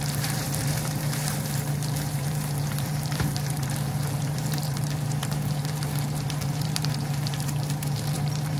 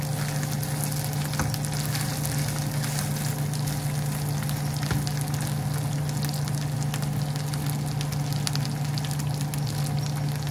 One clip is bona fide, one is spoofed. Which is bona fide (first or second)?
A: second